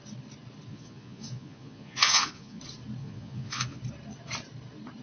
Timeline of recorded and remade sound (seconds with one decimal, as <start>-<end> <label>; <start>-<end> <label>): 0.0-0.7 recorded; 0.7-2.6 remade; 2.6-3.0 recorded; 3.0-3.8 remade; 3.8-5.0 recorded